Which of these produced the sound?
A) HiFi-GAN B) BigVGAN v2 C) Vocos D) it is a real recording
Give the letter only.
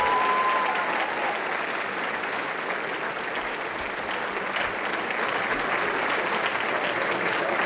D